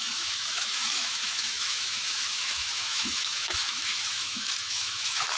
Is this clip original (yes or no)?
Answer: no